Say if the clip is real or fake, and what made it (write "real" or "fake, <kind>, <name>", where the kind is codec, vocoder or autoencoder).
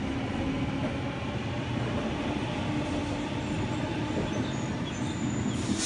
real